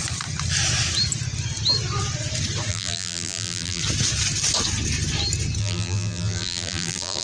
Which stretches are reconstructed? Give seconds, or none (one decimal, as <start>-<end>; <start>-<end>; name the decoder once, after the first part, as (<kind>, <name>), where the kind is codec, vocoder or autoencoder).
2.7-3.8 (vocoder, BigVGAN v2); 5.6-7.2